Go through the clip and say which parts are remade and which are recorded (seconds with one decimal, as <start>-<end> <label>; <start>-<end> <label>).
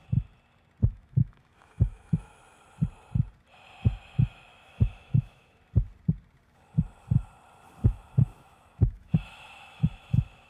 0.0-0.9 recorded; 0.9-2.4 remade; 2.4-4.5 recorded; 4.5-5.6 remade; 5.6-7.8 recorded; 7.8-10.1 remade; 10.1-10.5 recorded